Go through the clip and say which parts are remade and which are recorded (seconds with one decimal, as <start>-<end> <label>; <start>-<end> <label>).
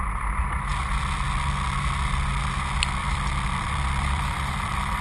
0.0-3.0 recorded; 3.0-5.0 remade